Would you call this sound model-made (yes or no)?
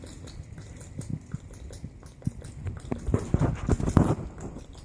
no